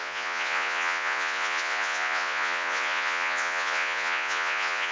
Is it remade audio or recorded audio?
remade